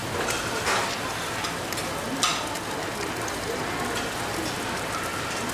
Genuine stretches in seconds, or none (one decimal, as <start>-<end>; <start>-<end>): 0.0-5.5